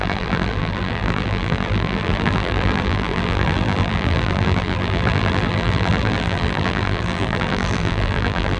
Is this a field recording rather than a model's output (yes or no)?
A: no